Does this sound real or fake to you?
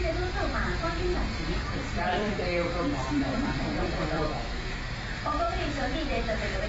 fake